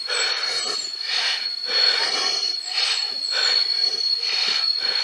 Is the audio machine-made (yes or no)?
no